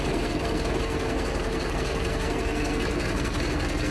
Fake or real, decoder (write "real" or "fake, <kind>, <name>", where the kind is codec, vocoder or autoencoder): fake, codec, SNAC